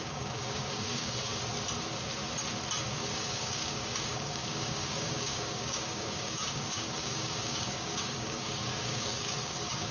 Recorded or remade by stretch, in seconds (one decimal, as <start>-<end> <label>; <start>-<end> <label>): 0.0-1.3 remade; 1.3-2.8 recorded; 2.8-9.9 remade